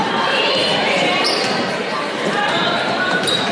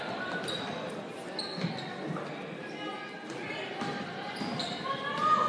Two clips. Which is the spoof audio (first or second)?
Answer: first